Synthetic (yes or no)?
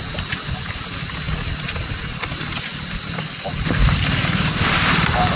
no